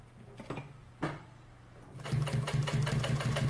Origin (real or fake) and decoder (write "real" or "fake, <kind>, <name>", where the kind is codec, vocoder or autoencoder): real